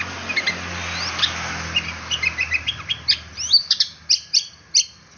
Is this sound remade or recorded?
recorded